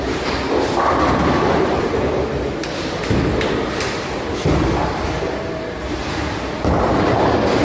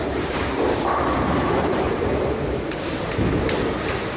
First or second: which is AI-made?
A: second